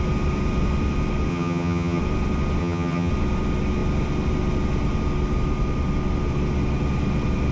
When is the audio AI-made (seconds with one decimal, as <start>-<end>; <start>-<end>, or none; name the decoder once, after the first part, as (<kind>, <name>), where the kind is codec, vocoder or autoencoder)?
1.3-2.0 (vocoder, HiFi-GAN); 2.6-3.1